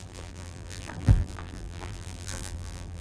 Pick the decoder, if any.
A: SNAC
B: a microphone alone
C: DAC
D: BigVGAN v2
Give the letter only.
D